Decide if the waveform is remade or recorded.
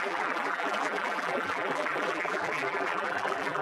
remade